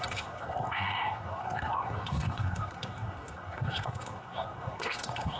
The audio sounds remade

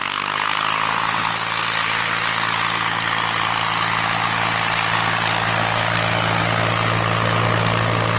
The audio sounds recorded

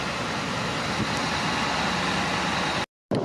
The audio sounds recorded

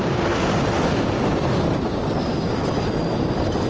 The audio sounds recorded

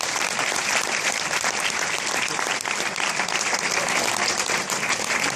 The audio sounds recorded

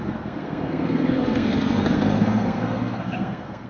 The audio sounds remade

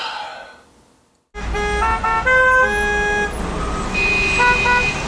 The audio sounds recorded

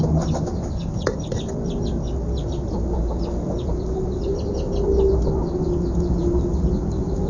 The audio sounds recorded